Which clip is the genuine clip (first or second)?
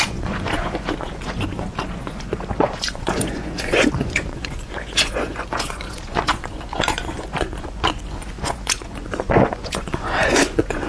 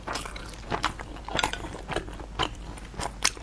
second